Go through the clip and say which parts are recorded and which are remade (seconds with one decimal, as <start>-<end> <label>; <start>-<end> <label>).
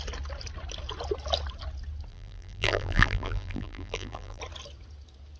0.0-2.1 recorded; 2.1-4.4 remade; 4.4-5.4 recorded